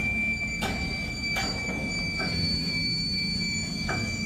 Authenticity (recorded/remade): remade